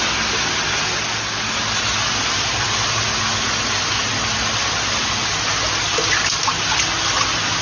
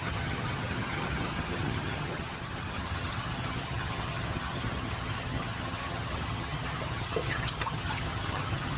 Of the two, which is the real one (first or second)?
first